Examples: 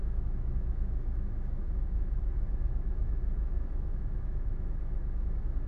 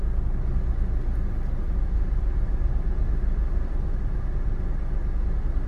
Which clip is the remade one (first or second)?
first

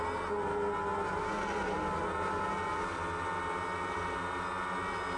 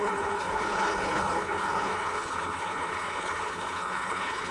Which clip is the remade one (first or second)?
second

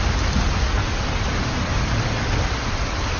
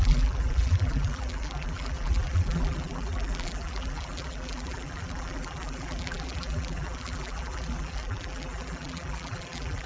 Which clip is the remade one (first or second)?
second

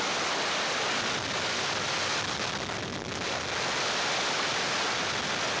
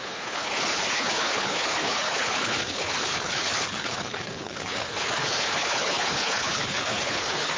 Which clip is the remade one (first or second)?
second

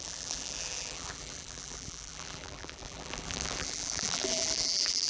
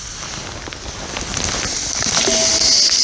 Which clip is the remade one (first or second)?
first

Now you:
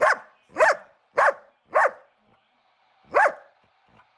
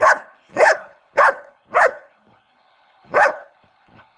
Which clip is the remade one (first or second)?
second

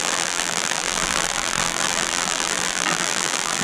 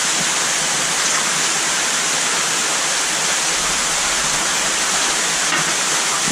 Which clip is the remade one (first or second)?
first